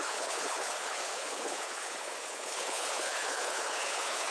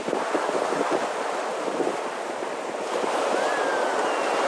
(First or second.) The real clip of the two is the second